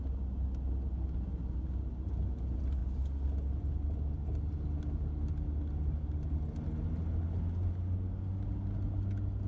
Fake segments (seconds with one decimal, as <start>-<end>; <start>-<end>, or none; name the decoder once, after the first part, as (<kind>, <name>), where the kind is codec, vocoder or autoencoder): none

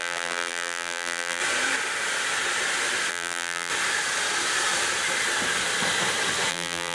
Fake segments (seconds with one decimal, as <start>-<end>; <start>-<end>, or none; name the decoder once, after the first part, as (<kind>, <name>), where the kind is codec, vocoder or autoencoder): 0.0-1.4 (vocoder, BigVGAN v2); 3.1-3.7; 6.5-6.9

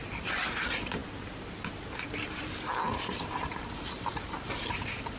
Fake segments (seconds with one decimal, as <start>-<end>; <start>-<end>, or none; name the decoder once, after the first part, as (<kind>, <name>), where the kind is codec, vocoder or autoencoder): none